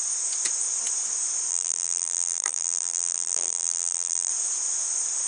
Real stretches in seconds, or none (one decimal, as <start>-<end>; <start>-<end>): 0.0-1.5; 4.3-5.3